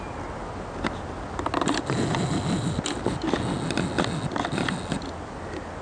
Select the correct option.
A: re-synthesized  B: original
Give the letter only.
B